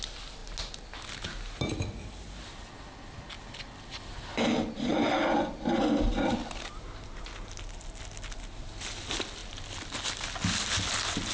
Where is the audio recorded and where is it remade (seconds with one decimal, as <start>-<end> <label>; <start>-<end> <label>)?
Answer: 0.0-11.3 recorded